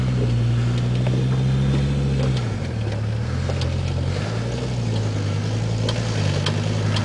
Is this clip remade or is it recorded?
recorded